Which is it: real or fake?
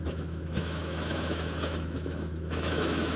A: fake